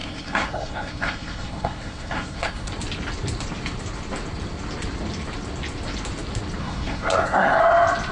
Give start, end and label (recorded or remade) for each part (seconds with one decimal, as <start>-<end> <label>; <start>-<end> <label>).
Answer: 0.0-2.7 remade; 2.7-6.6 recorded; 6.6-7.6 remade; 7.6-8.1 recorded